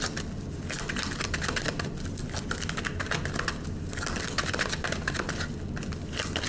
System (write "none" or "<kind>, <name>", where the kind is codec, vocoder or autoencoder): none